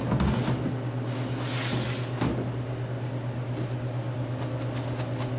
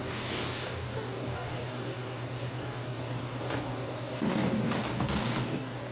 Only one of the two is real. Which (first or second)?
first